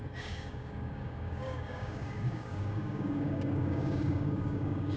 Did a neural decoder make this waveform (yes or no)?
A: yes